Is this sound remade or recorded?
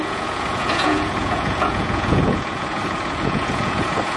remade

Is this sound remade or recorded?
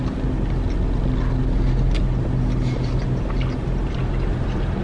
recorded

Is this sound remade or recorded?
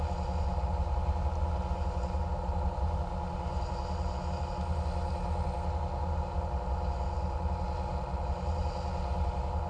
recorded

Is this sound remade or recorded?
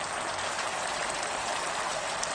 recorded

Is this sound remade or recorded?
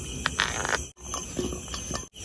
recorded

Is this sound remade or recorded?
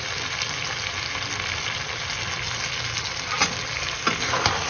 recorded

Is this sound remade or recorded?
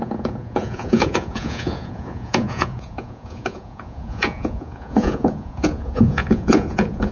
remade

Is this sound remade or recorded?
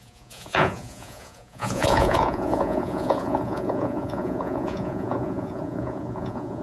remade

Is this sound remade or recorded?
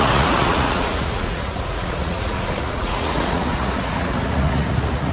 remade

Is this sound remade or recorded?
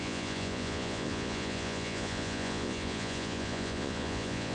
remade